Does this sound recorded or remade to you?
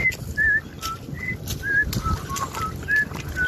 remade